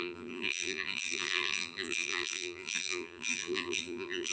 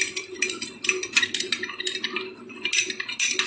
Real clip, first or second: second